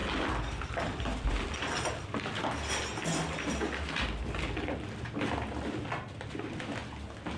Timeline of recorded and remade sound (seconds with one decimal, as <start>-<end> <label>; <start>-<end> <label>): 0.0-7.4 recorded

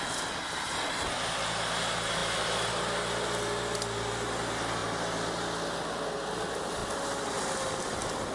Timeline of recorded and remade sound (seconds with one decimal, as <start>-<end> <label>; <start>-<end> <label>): 0.0-8.3 recorded